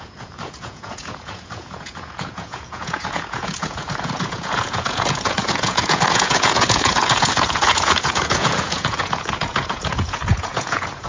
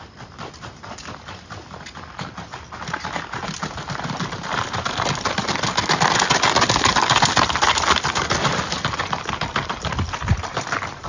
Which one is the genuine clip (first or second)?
second